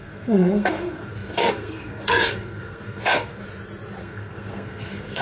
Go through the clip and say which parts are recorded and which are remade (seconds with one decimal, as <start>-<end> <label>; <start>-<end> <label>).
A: 0.0-3.4 remade; 3.4-4.0 recorded; 4.0-5.2 remade